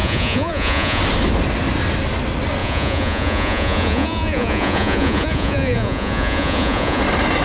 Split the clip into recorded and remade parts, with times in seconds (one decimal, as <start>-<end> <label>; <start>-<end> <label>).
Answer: 0.0-1.0 remade; 1.0-2.6 recorded; 2.6-7.0 remade; 7.0-7.4 recorded